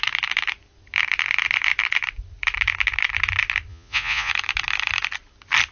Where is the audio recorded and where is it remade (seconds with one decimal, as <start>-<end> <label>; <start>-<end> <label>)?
0.0-3.7 recorded; 3.7-4.3 remade; 4.3-5.7 recorded